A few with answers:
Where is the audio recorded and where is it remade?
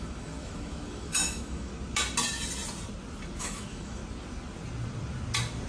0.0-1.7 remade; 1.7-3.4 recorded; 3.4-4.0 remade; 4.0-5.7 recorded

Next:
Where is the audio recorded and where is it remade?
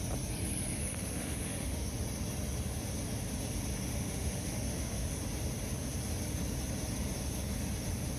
0.0-0.8 recorded; 0.8-1.9 remade; 1.9-3.9 recorded; 3.9-5.2 remade; 5.2-8.2 recorded